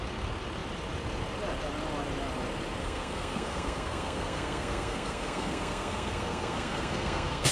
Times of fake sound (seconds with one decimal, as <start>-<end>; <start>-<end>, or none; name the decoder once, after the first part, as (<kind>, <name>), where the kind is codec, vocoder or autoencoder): 2.8-7.5 (codec, SNAC)